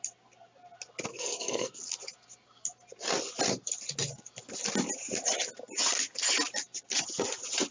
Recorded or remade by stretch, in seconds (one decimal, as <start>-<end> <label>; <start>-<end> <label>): 0.0-1.1 recorded; 1.1-1.8 remade; 1.8-7.7 recorded